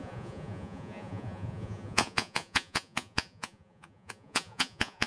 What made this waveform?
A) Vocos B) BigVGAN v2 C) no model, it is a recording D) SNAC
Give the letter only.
A